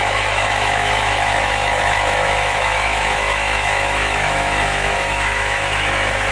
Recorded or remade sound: remade